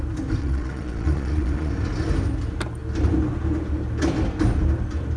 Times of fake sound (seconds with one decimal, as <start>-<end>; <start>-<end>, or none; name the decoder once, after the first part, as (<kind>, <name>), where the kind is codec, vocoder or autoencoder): 0.4-1.7 (vocoder, Vocos)